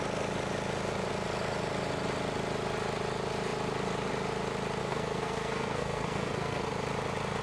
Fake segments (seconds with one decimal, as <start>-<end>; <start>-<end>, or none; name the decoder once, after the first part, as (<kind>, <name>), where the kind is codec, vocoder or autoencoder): 4.8-6.7 (codec, SNAC)

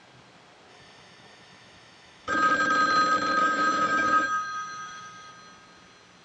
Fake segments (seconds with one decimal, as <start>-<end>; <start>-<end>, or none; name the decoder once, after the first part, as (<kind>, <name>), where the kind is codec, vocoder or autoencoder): 0.7-2.5 (autoencoder, DAC-VAE); 3.4-5.3

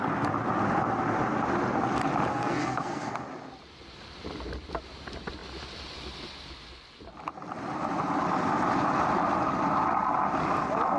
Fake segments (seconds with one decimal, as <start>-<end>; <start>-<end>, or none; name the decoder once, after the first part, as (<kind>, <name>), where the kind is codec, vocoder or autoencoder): 2.3-3.2 (codec, SNAC)

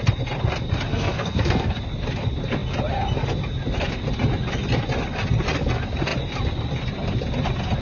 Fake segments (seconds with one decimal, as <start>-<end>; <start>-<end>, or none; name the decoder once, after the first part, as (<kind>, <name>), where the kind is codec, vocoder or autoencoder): 0.9-1.8 (codec, SNAC)

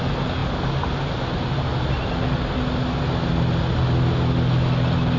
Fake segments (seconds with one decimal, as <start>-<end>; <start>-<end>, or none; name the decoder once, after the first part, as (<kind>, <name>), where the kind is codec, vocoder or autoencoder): none

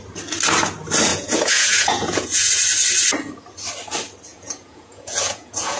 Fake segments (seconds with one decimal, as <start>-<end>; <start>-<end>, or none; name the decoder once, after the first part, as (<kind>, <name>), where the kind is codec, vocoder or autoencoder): 1.1-2.5 (vocoder, Vocos); 4.3-5.8

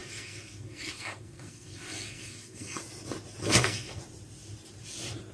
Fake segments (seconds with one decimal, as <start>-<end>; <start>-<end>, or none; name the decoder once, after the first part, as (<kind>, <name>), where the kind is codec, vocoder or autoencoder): 0.0-2.8 (codec, SNAC); 3.4-4.0